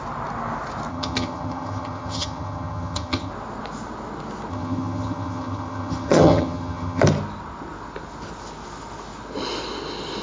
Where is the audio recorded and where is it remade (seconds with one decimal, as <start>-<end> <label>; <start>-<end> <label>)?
0.0-0.9 recorded; 0.9-3.3 remade; 3.3-4.5 recorded; 4.5-7.0 remade; 7.0-10.2 recorded